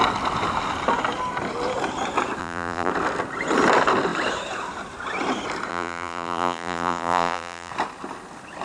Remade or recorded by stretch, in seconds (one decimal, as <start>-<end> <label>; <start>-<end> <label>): 0.0-2.4 recorded; 2.4-2.9 remade; 2.9-5.7 recorded; 5.7-7.7 remade; 7.7-8.6 recorded